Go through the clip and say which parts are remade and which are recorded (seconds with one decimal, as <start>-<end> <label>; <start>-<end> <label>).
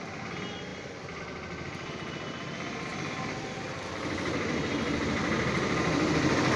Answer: 0.0-6.6 recorded